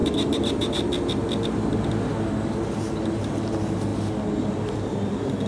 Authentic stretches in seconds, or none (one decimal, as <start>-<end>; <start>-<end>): 0.0-5.5